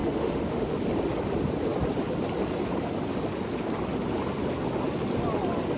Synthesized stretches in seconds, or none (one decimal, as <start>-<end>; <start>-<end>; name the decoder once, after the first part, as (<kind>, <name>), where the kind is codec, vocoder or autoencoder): 0.0-0.8 (autoencoder, DAC-VAE)

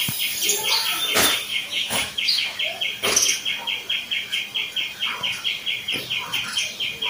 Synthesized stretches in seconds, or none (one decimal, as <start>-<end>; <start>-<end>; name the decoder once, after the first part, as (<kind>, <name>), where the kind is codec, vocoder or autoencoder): 1.5-2.6 (autoencoder, DAC-VAE)

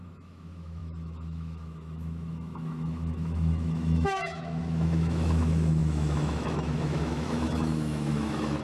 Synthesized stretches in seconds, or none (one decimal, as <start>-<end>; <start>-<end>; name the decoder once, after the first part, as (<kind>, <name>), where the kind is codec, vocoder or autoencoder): 0.0-8.6 (autoencoder, DAC-VAE)